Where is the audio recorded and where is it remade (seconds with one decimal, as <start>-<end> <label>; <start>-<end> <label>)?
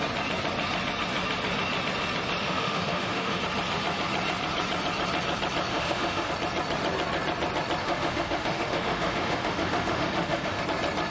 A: 0.0-2.4 recorded; 2.4-3.4 remade; 3.4-5.7 recorded; 5.7-6.3 remade; 6.3-7.8 recorded; 7.8-10.6 remade; 10.6-11.1 recorded